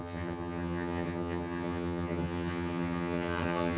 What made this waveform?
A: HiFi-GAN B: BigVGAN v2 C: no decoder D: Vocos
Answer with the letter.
A